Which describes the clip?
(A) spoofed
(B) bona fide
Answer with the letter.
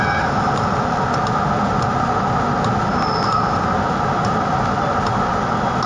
B